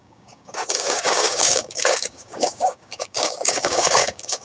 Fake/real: fake